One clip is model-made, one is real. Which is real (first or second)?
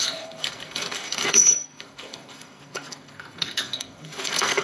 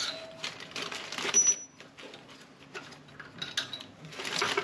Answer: second